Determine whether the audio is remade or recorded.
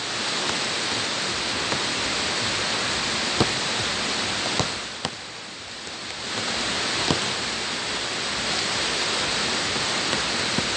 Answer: recorded